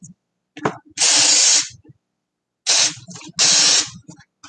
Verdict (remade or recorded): recorded